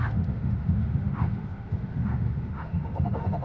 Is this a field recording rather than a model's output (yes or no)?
no